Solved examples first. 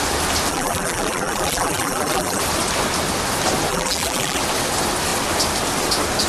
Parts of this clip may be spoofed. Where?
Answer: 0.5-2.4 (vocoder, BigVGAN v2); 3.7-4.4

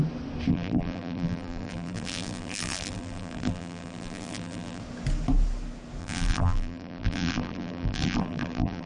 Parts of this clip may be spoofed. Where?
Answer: 0.5-4.8 (vocoder, BigVGAN v2); 6.0-8.9